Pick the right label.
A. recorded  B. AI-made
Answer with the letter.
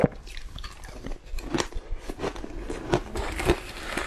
B